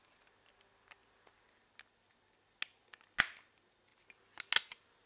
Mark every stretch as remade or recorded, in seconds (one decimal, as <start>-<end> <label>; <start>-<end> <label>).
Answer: 0.0-5.1 recorded